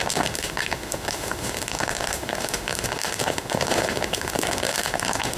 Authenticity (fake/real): fake